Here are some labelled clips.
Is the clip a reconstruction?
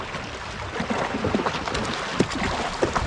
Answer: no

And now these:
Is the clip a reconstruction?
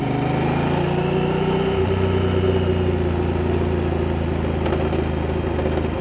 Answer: no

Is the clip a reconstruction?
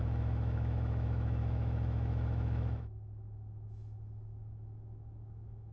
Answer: yes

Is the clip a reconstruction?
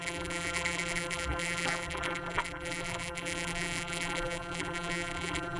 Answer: yes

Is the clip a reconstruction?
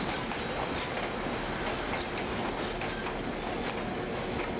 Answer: no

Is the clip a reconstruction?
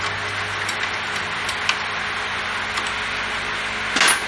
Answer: no